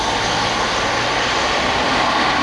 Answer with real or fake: real